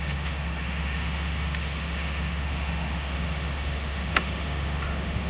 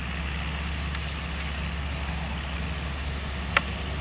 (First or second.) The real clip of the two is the second